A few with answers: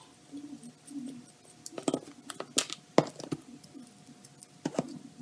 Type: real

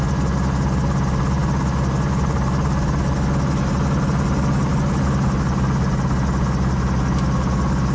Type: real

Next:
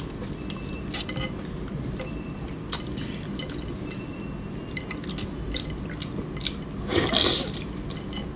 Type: real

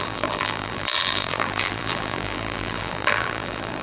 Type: fake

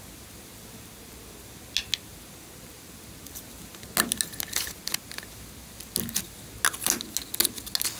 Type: real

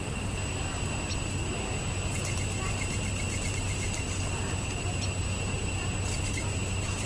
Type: real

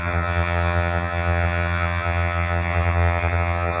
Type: fake